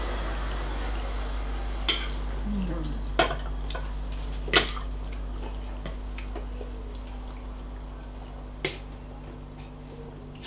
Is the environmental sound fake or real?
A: real